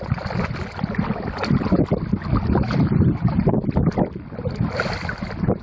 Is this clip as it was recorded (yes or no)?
yes